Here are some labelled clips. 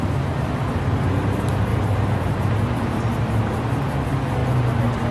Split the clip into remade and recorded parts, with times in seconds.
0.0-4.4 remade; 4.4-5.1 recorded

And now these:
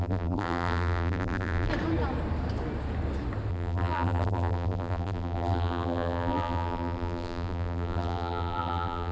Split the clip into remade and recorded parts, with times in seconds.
0.0-1.7 remade; 1.7-3.5 recorded; 3.5-9.1 remade

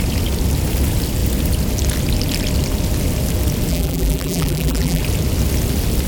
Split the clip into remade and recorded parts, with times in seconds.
0.0-3.7 recorded; 3.7-5.0 remade; 5.0-6.1 recorded

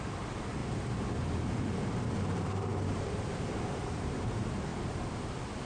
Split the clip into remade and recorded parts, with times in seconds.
0.0-0.6 remade; 0.6-1.4 recorded; 1.4-4.7 remade; 4.7-5.6 recorded

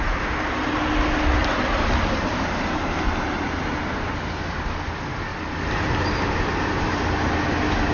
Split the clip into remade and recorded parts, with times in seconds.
0.0-1.4 recorded; 1.4-3.8 remade; 3.8-5.3 recorded; 5.3-7.3 remade; 7.3-7.9 recorded

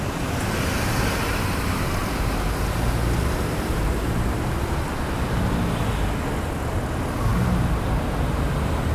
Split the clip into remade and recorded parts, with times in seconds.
0.0-8.9 recorded